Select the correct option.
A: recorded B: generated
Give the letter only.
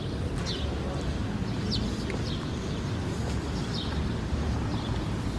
A